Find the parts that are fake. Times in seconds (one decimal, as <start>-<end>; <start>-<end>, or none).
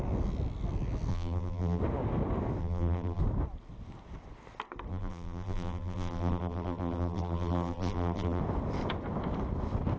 1.1-1.8; 2.6-3.2; 4.9-8.4